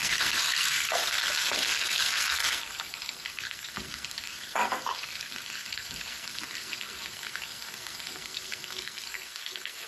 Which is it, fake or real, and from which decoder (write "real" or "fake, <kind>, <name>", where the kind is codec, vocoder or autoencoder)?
fake, codec, SNAC